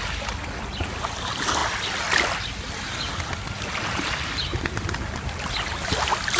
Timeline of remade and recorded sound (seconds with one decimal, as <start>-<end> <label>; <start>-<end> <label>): 0.0-6.4 recorded